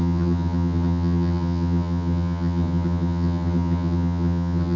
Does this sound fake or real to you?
fake